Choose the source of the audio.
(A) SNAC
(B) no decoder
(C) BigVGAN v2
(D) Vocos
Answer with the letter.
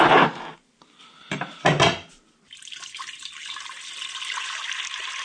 B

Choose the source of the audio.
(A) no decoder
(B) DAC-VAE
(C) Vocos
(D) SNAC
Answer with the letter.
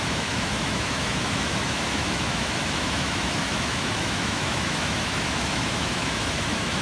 B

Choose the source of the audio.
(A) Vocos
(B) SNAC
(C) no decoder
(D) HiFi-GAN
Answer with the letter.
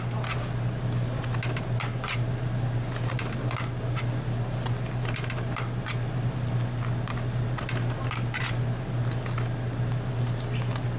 C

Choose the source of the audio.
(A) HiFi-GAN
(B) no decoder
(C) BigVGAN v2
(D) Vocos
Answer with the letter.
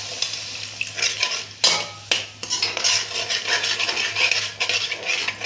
B